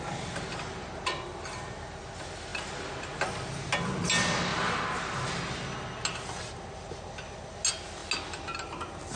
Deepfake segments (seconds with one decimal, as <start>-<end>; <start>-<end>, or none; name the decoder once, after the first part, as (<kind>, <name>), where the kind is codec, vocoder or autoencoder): 0.8-2.0 (vocoder, BigVGAN v2); 4.5-5.3